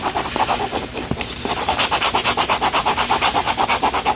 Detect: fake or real real